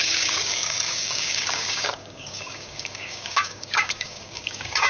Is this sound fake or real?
fake